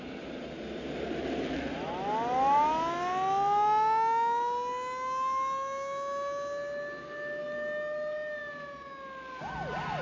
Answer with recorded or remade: recorded